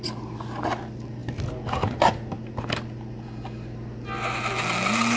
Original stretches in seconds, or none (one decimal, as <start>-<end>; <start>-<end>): 0.0-5.2